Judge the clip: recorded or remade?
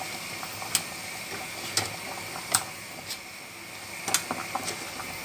recorded